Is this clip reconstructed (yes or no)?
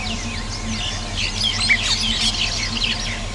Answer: no